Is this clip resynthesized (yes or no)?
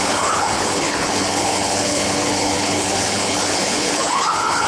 yes